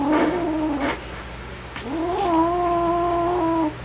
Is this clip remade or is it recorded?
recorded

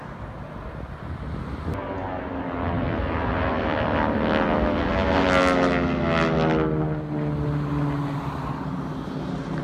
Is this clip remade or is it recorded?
recorded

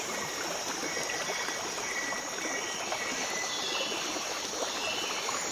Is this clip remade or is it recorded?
recorded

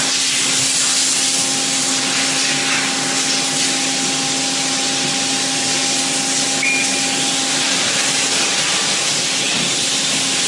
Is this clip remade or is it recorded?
recorded